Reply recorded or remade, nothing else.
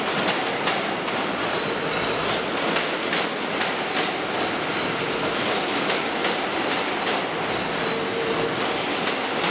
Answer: recorded